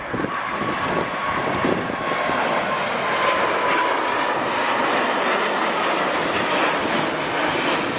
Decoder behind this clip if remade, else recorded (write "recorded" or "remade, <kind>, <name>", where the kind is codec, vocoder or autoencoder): recorded